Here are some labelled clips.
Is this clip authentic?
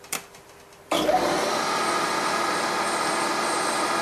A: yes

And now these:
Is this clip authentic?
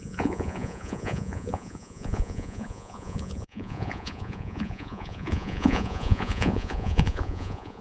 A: no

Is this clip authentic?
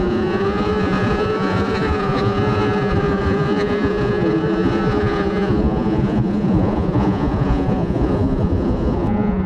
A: no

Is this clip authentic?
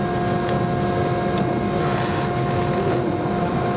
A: yes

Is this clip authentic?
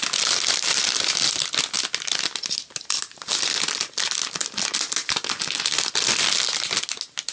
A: yes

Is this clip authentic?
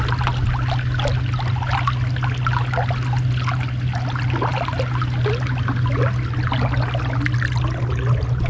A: yes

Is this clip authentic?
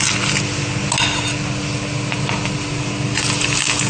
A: yes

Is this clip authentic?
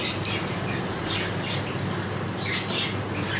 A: yes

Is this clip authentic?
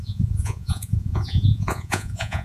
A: no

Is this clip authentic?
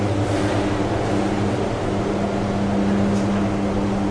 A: yes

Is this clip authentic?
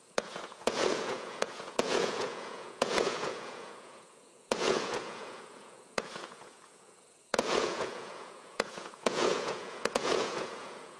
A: no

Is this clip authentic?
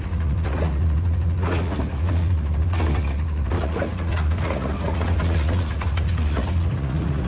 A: no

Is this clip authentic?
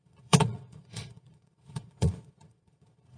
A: no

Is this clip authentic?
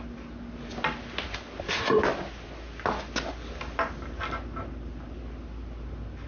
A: yes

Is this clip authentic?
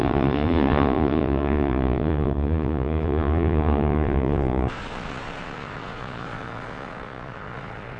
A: no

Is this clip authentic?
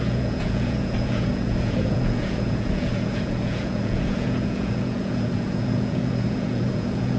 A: no